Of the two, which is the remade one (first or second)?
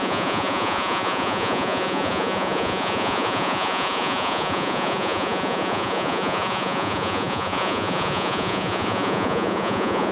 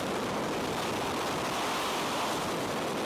first